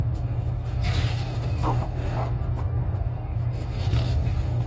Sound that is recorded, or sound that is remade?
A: remade